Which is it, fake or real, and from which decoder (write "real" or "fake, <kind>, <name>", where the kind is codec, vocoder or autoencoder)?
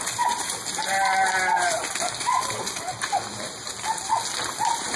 real